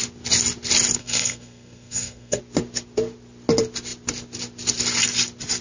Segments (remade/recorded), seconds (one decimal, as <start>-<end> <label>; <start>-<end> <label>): 0.0-1.0 recorded; 1.0-2.4 remade; 2.4-5.6 recorded